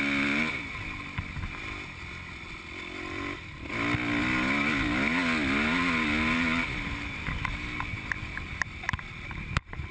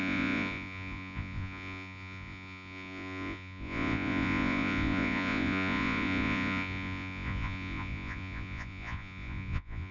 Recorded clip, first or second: first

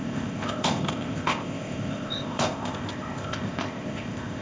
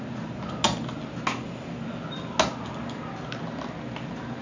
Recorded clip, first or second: second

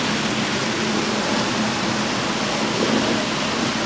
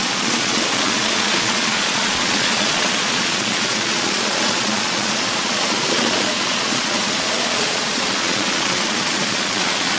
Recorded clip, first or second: first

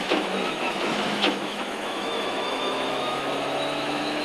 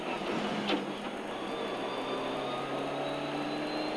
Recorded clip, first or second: second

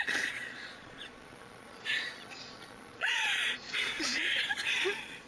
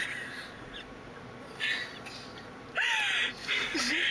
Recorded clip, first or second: second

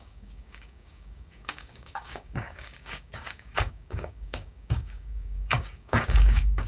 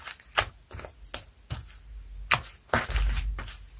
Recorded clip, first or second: second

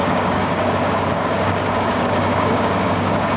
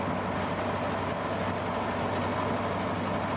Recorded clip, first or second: second